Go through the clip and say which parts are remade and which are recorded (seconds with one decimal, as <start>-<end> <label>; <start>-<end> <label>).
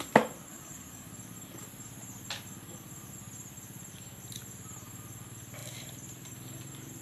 0.0-0.5 recorded; 0.5-1.1 remade; 1.1-7.0 recorded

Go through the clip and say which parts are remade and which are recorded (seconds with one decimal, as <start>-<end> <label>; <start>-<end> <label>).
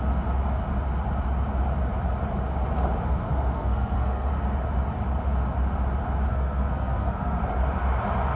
0.0-3.2 recorded; 3.2-4.3 remade; 4.3-6.3 recorded; 6.3-7.4 remade; 7.4-8.4 recorded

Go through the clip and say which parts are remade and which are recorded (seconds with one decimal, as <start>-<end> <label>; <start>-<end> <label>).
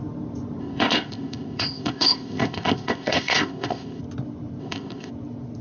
0.0-0.6 recorded; 0.6-4.0 remade; 4.0-4.6 recorded; 4.6-5.1 remade; 5.1-5.6 recorded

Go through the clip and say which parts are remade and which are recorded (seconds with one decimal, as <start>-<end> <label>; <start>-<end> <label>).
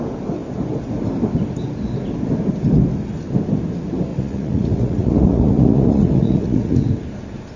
0.0-4.1 recorded; 4.1-6.9 remade; 6.9-7.6 recorded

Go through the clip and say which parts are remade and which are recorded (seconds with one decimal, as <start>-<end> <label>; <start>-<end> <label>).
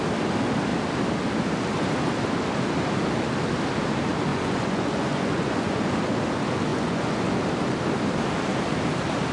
0.0-4.3 recorded; 4.3-5.9 remade; 5.9-6.7 recorded; 6.7-7.3 remade; 7.3-9.3 recorded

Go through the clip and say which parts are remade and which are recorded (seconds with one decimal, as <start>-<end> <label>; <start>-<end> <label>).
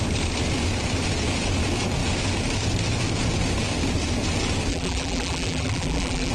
0.0-4.7 recorded; 4.7-6.3 remade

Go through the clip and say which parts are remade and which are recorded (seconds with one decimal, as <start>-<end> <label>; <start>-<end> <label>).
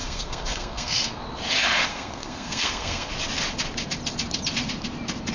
0.0-1.2 remade; 1.2-1.9 recorded; 1.9-3.1 remade; 3.1-5.3 recorded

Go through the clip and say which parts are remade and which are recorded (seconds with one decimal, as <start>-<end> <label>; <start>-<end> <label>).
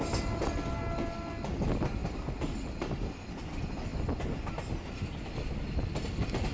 0.0-6.5 recorded